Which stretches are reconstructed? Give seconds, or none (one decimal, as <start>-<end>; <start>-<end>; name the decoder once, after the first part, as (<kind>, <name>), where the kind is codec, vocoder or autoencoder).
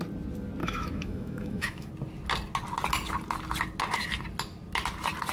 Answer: 0.6-1.9 (autoencoder, DAC-VAE)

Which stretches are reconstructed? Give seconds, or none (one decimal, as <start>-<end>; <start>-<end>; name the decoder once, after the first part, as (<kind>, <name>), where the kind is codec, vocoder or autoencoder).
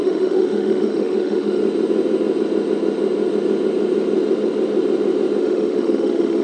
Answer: 0.0-1.6 (autoencoder, DAC-VAE); 5.4-6.4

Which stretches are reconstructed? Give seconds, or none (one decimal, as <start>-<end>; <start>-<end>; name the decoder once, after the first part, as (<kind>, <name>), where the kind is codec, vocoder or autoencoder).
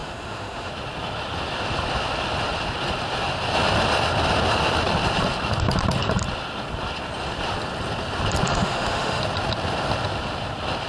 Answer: 0.0-0.7 (autoencoder, DAC-VAE); 8.5-9.2